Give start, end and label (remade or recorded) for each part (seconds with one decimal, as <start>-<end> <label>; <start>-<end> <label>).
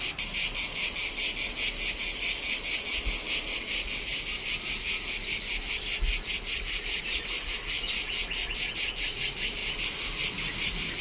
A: 0.0-11.0 recorded